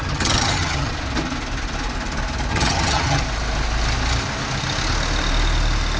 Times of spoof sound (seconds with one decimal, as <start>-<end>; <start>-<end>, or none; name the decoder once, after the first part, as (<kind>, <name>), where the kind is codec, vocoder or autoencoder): 0.0-0.9 (vocoder, HiFi-GAN); 2.5-3.2